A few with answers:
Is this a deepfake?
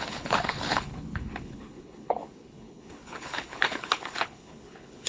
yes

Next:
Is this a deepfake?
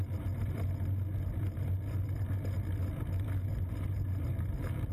no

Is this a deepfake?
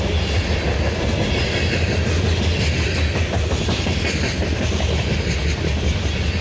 no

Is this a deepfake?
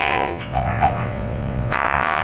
yes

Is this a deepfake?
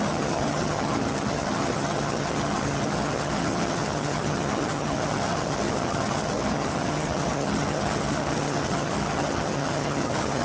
yes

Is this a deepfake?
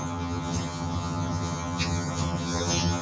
yes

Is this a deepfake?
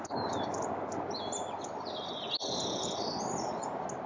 no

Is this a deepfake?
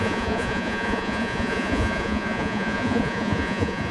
yes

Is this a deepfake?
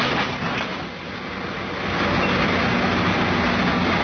no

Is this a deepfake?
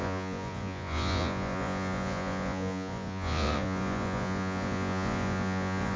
yes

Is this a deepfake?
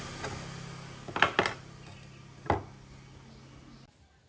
no